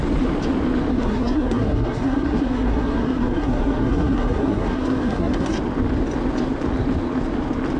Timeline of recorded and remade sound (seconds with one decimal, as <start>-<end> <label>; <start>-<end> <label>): 0.0-0.9 recorded; 0.9-5.6 remade; 5.6-7.8 recorded